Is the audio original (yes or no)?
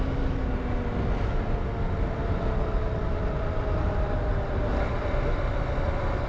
yes